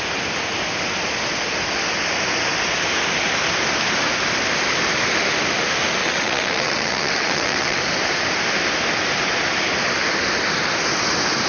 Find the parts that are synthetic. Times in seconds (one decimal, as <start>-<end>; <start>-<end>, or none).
6.0-7.8